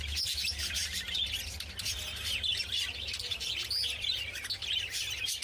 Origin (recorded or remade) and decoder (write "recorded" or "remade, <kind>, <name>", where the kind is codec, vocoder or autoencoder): recorded